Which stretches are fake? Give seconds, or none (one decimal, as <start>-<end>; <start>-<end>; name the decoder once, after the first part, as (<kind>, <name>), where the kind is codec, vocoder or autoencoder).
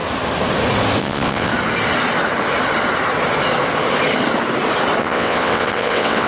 1.0-1.5 (vocoder, WaveNeXt); 5.0-6.3